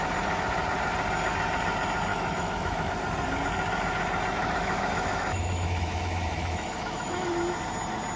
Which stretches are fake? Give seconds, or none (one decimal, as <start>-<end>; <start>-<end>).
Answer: 2.1-2.9; 4.4-7.3

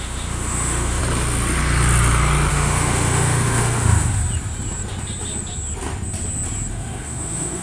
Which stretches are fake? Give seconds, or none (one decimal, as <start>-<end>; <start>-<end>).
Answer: 0.0-1.0; 2.5-4.2; 6.7-7.6

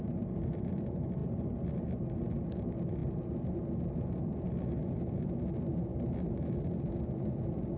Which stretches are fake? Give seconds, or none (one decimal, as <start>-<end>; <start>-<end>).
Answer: none

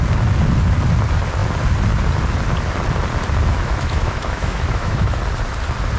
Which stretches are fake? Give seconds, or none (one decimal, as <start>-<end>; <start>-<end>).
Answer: 3.5-5.2